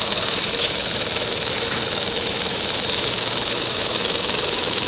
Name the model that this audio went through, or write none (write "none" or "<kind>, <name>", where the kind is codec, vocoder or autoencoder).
autoencoder, DAC-VAE